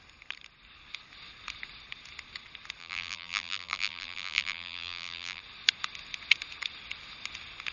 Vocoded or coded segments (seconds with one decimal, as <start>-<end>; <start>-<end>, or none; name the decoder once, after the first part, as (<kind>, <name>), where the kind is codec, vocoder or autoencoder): 2.8-5.4 (vocoder, BigVGAN v2)